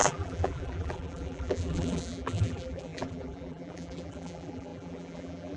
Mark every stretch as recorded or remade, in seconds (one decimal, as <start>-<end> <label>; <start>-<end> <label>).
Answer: 0.0-5.6 remade

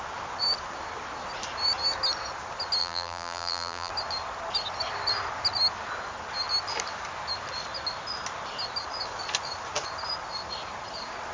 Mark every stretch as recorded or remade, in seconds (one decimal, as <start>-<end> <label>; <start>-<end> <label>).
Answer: 0.0-2.8 recorded; 2.8-3.9 remade; 3.9-11.3 recorded

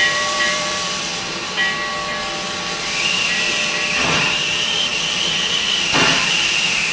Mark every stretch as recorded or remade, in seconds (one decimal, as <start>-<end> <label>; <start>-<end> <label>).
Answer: 0.0-1.1 remade; 1.1-2.8 recorded; 2.8-4.9 remade; 4.9-5.5 recorded; 5.5-6.9 remade